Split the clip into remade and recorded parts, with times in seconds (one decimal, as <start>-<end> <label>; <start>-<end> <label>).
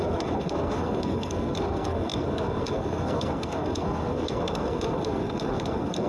0.0-6.1 remade